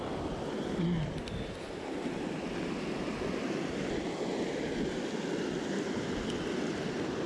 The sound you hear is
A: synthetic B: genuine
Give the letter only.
B